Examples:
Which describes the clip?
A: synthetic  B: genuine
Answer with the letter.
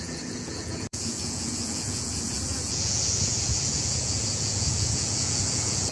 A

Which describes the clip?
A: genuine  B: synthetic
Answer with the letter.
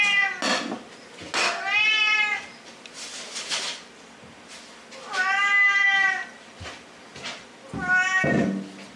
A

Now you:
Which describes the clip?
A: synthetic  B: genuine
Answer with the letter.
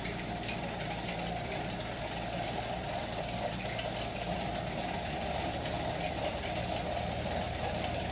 A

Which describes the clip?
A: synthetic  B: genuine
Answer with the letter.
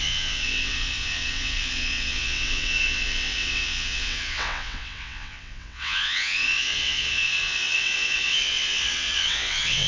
A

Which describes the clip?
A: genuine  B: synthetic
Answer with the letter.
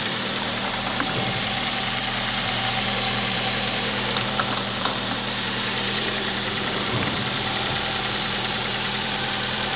B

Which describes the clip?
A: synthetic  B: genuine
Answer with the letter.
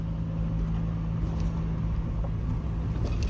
B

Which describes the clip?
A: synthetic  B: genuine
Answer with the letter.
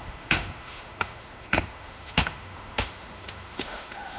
A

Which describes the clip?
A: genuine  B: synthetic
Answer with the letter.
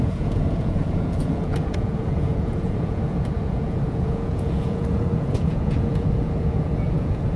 B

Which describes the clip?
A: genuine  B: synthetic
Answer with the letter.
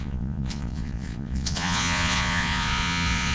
B